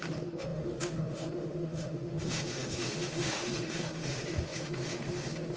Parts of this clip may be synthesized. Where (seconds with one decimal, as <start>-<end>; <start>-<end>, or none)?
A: 0.0-5.6